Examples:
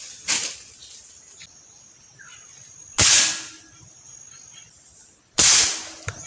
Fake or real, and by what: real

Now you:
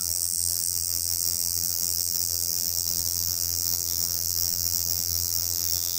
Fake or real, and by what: fake, vocoder, BigVGAN v2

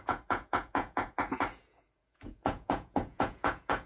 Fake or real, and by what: fake, vocoder, Vocos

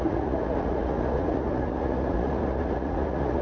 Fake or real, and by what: fake, vocoder, Vocos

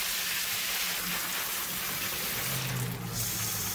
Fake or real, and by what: real